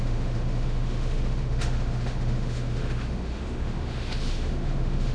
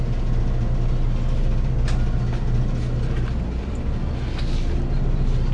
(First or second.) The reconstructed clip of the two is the first